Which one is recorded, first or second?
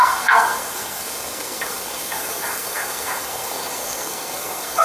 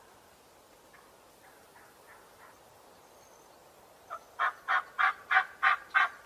second